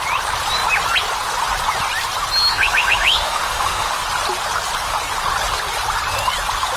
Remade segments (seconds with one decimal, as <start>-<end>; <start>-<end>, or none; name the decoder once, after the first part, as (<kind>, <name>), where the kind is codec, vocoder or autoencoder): 2.5-3.9 (autoencoder, DAC-VAE)